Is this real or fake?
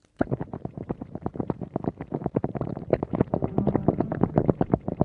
fake